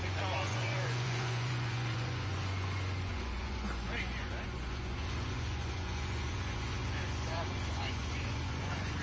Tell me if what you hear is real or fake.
fake